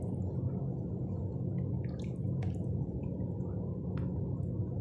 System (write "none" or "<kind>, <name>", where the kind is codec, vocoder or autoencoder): none